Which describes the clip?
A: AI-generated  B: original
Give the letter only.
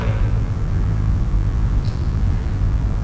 A